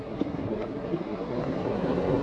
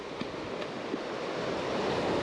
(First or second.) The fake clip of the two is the first